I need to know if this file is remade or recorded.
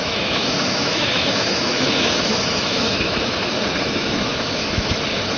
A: remade